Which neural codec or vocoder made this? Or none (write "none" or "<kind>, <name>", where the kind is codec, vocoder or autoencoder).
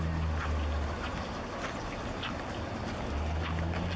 none